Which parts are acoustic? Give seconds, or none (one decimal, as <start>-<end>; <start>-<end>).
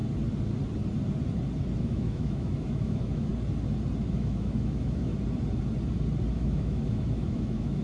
0.0-1.8; 3.3-4.1; 5.1-6.3